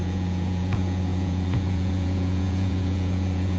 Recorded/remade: remade